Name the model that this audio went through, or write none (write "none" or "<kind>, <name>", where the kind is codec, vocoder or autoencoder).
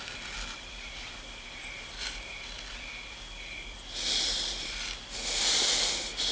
none